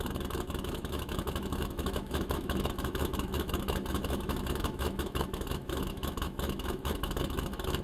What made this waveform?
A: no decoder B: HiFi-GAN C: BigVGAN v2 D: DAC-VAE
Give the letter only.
D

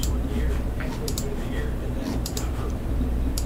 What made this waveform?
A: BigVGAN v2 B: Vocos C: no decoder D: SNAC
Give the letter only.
A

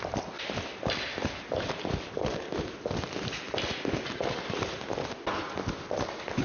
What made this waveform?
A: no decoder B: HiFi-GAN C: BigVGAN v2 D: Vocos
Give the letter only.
A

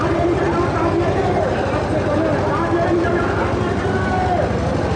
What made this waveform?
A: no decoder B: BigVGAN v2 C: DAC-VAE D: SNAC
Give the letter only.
A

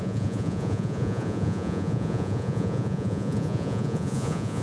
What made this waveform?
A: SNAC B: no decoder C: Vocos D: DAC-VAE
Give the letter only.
C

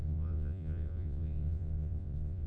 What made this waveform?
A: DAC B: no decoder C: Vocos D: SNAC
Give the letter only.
C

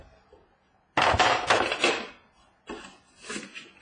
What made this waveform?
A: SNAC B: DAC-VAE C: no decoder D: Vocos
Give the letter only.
C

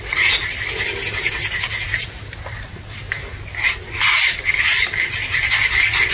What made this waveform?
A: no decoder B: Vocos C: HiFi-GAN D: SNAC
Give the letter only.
A